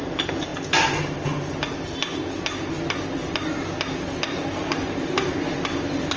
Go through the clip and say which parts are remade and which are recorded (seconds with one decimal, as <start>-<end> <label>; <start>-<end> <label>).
0.0-6.2 recorded